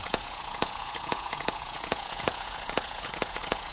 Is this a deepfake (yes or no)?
yes